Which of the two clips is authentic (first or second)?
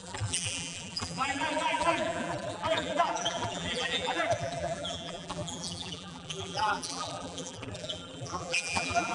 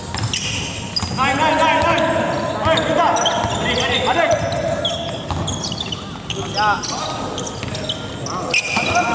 second